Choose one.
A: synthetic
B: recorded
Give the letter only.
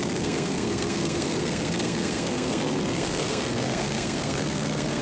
A